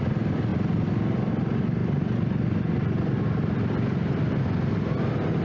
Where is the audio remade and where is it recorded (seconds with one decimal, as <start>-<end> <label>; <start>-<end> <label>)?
0.0-5.4 recorded